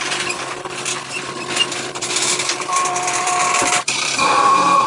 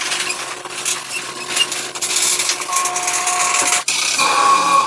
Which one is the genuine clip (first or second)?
second